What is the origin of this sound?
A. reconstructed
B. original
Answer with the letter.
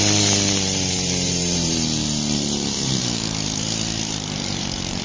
A